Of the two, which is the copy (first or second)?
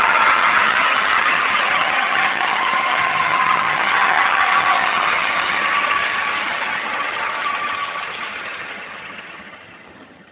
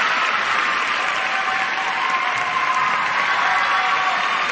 first